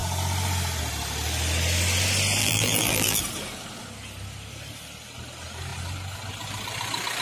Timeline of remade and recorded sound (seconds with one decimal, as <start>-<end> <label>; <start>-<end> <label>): 0.0-2.4 recorded; 2.4-3.2 remade; 3.2-7.2 recorded